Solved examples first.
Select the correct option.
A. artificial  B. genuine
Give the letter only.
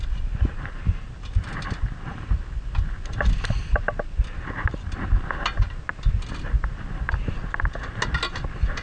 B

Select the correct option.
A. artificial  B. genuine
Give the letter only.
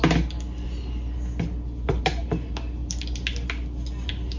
B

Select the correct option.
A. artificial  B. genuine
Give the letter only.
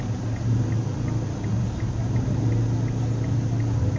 B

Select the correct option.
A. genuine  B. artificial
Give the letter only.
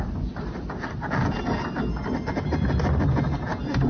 A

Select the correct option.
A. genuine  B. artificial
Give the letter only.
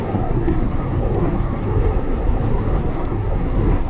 B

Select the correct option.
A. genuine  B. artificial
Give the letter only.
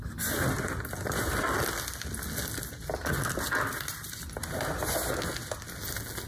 A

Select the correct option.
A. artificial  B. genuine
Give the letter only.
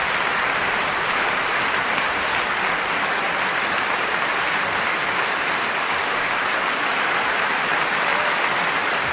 B